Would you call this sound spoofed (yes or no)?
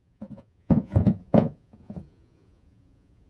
yes